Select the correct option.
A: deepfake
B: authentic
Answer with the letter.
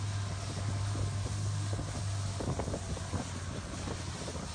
B